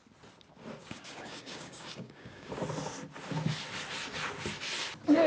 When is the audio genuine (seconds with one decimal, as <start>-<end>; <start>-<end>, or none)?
0.0-0.8; 2.5-5.3